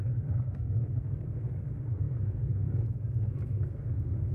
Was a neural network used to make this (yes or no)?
yes